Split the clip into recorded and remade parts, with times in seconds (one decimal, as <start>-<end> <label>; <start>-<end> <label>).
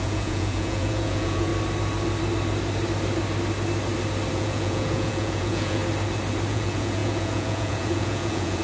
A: 0.0-1.5 remade; 1.5-4.3 recorded; 4.3-5.8 remade; 5.8-6.5 recorded; 6.5-8.6 remade